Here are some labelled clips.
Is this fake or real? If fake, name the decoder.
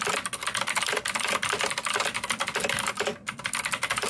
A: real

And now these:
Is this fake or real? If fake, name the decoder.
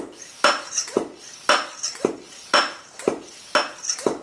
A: real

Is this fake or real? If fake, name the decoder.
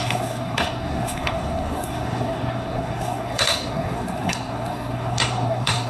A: fake, codec, SNAC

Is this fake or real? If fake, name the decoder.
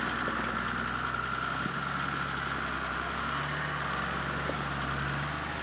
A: real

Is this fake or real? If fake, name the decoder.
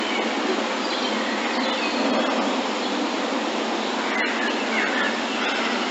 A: real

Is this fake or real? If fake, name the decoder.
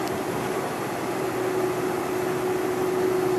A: real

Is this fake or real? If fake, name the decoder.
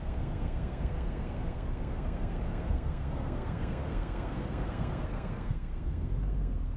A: fake, codec, SNAC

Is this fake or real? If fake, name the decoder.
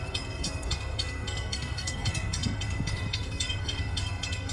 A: fake, codec, SNAC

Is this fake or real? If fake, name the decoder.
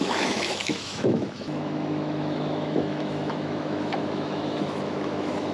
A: fake, autoencoder, DAC-VAE